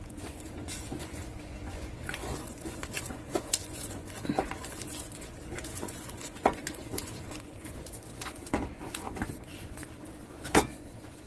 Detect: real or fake fake